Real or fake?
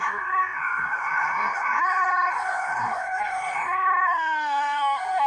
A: fake